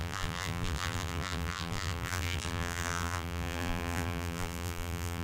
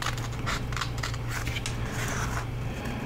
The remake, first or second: first